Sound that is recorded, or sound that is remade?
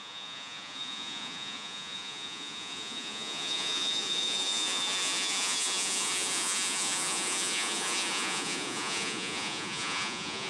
remade